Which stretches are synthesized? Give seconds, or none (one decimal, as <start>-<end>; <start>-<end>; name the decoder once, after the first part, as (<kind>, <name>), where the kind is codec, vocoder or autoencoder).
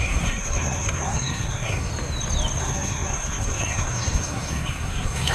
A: 0.0-1.9 (codec, SNAC); 2.6-5.3